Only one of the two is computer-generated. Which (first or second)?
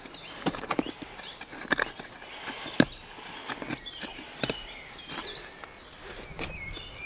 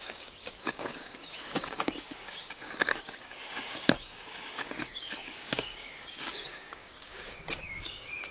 second